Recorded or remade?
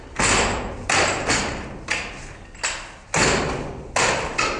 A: recorded